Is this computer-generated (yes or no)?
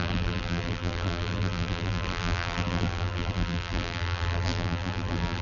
yes